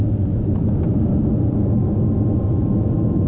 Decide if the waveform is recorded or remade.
recorded